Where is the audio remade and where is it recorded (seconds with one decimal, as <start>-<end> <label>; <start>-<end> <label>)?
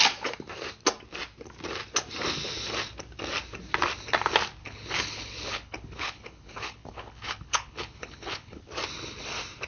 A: 0.0-4.6 recorded; 4.6-8.6 remade; 8.6-9.7 recorded